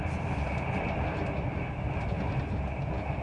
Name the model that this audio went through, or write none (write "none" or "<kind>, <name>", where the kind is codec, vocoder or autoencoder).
none